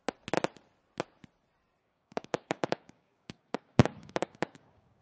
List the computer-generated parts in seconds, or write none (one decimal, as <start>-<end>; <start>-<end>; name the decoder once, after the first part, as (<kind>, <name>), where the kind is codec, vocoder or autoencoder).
1.8-5.0 (codec, DAC)

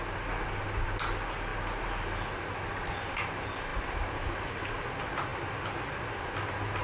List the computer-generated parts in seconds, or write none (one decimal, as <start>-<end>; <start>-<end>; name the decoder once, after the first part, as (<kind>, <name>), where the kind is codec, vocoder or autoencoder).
none

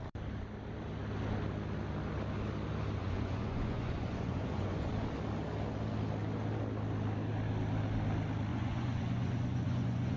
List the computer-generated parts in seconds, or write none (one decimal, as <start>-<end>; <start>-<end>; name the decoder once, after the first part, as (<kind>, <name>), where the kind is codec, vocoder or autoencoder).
3.0-4.9 (vocoder, Vocos); 8.5-10.2

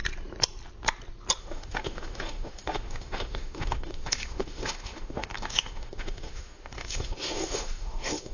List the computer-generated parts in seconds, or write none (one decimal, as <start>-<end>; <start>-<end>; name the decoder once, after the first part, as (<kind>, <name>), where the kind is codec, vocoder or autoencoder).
1.4-8.3 (autoencoder, DAC-VAE)

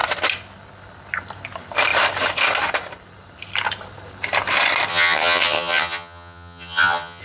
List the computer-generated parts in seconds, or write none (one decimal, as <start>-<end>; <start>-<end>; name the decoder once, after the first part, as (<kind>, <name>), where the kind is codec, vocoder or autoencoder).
4.9-7.2 (vocoder, HiFi-GAN)

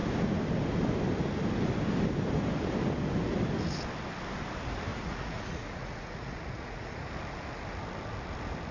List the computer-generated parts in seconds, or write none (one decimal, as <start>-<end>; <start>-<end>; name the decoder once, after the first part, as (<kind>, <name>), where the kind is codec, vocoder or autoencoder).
4.9-7.1 (vocoder, Vocos)